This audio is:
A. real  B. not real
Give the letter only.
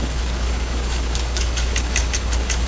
B